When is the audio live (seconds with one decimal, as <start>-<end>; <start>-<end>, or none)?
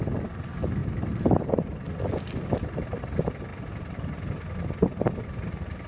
0.0-5.9